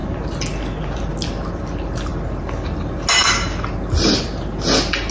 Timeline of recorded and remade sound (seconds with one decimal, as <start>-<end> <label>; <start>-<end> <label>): 0.0-5.1 recorded